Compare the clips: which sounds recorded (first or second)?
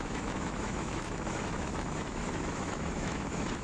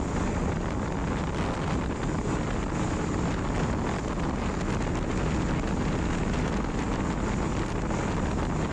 second